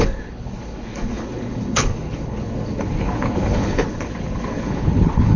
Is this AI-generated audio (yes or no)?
yes